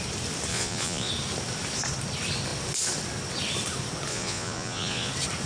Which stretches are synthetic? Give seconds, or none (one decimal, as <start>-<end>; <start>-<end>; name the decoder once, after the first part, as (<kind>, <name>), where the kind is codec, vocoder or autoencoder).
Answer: 0.5-1.1 (vocoder, Vocos); 4.1-5.1